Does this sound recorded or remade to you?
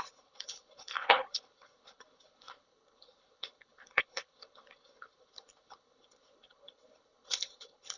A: remade